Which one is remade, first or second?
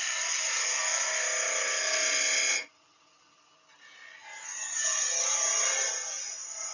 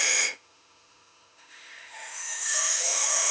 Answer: second